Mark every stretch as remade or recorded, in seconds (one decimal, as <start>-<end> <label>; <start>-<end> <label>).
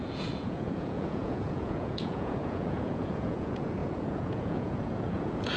0.0-5.6 remade